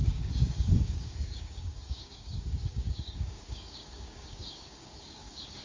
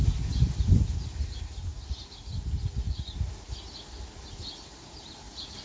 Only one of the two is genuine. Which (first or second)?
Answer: second